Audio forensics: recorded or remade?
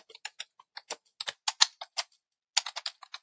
recorded